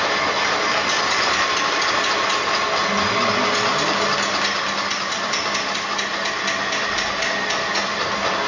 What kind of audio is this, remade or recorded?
recorded